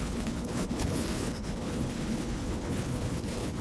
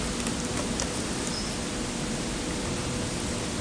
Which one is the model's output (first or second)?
first